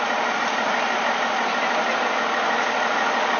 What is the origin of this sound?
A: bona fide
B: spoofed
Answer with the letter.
A